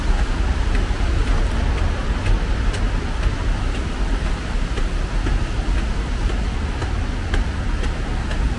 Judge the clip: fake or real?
real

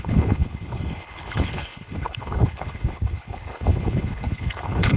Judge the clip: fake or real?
fake